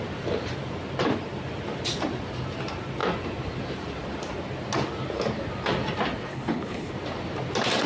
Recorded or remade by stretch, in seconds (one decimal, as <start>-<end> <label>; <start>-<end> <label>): 0.0-6.3 recorded; 6.3-6.9 remade; 6.9-7.9 recorded